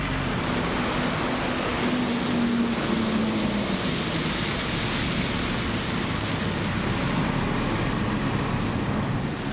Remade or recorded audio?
recorded